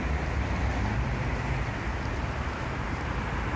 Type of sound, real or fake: real